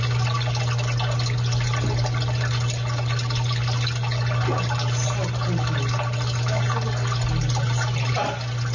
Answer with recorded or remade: recorded